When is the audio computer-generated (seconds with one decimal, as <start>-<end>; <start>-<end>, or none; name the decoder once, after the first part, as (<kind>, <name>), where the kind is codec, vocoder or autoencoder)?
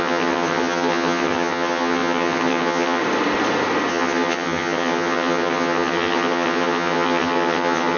0.0-3.0 (vocoder, HiFi-GAN); 3.9-8.0